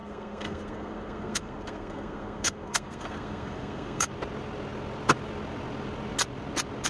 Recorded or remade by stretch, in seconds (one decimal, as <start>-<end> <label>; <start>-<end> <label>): 0.0-4.1 remade; 4.1-6.9 recorded